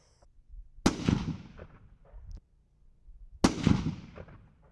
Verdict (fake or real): real